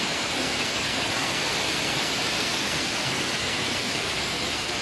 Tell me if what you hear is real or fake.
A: fake